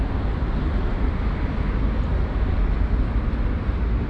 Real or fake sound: real